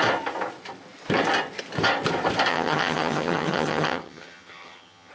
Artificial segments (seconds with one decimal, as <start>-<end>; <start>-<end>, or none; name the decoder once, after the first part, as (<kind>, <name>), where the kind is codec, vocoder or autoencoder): 2.5-5.1 (vocoder, HiFi-GAN)